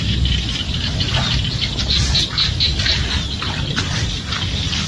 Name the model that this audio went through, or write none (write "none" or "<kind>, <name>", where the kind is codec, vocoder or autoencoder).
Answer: none